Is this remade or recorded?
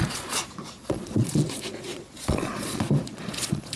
remade